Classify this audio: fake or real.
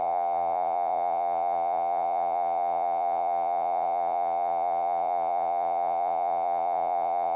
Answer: fake